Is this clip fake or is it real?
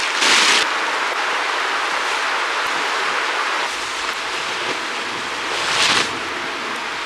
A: real